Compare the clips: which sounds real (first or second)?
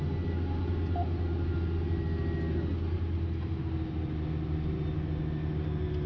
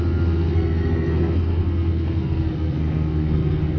first